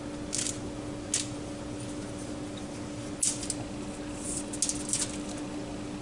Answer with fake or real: real